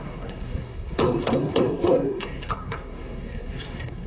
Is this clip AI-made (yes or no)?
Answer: yes